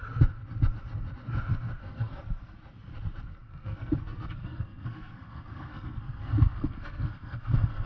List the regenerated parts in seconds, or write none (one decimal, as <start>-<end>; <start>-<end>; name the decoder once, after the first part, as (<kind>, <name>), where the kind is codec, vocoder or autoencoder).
1.8-2.6 (codec, SNAC); 3.3-7.9